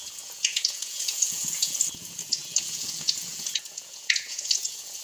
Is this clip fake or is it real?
fake